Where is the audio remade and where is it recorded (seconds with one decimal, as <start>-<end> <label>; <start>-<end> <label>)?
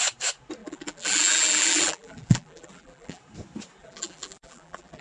0.0-0.6 recorded; 0.6-3.2 remade; 3.2-3.8 recorded; 3.8-5.0 remade